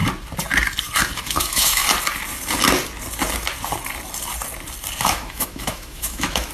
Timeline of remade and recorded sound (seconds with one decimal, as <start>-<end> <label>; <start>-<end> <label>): 0.0-1.2 recorded; 1.2-1.8 remade; 1.8-5.0 recorded; 5.0-6.5 remade